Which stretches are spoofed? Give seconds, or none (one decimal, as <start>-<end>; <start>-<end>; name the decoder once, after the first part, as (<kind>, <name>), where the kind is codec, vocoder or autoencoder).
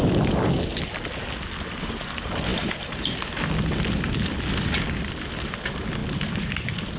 none